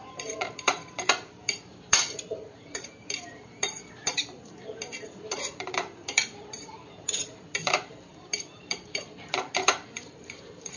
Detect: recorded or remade remade